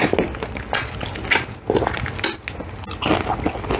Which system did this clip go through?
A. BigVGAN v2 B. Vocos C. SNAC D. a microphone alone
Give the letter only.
D